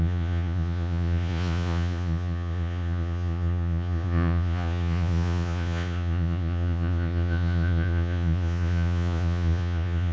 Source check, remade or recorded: remade